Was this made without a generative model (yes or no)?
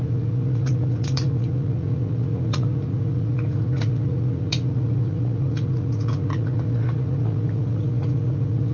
no